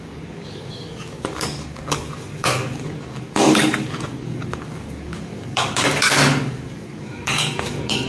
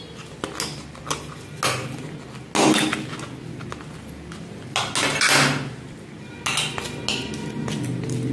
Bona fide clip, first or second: second